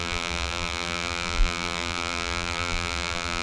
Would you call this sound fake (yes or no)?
yes